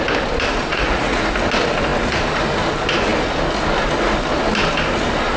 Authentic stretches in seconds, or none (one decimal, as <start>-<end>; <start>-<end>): 0.0-0.6; 1.3-5.4